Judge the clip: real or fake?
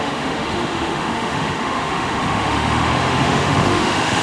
fake